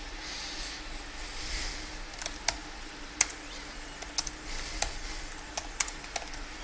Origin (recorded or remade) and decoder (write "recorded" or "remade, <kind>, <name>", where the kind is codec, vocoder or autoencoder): recorded